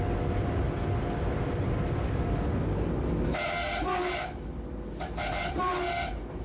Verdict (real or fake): real